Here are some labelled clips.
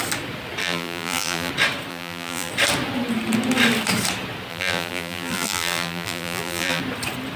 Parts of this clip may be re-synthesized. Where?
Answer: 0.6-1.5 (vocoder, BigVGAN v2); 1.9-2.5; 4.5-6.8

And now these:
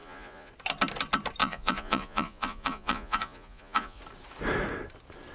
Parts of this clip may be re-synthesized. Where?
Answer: 0.0-0.5 (vocoder, Vocos); 1.4-4.0